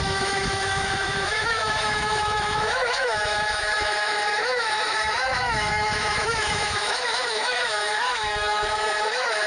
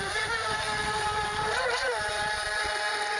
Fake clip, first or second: first